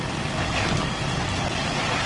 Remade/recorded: recorded